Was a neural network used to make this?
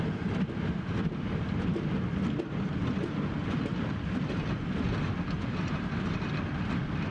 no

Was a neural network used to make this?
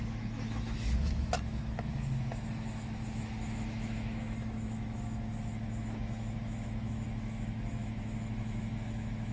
yes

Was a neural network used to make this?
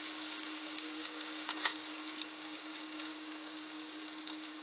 yes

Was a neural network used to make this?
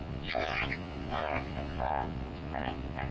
yes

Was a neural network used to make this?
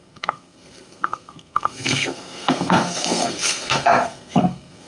yes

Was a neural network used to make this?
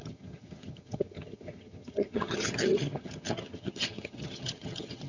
yes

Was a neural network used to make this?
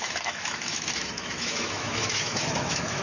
yes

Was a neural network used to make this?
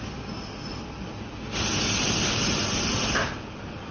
no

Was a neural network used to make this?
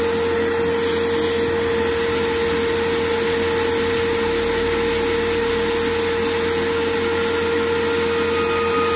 no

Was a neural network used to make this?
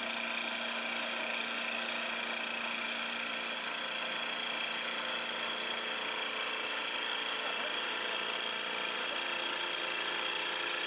no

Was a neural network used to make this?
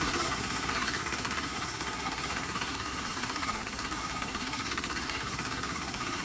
yes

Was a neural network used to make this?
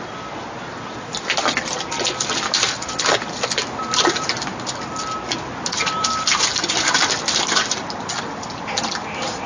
no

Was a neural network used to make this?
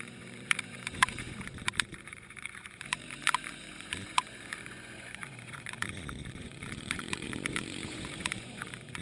yes